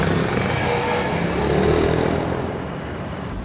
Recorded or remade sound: recorded